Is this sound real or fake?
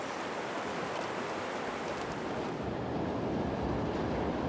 real